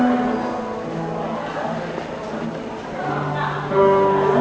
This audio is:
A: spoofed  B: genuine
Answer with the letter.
B